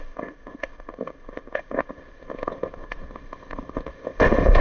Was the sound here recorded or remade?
remade